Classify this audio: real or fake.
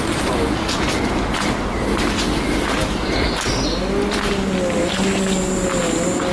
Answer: real